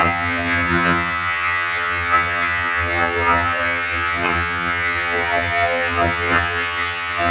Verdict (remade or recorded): remade